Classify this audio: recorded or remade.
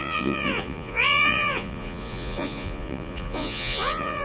remade